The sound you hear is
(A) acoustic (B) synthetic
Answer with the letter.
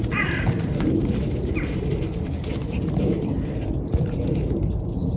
B